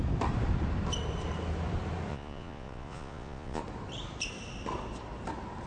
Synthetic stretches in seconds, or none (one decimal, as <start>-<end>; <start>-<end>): 2.1-3.6